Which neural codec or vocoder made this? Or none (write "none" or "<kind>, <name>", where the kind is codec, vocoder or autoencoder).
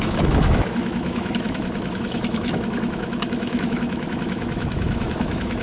autoencoder, DAC-VAE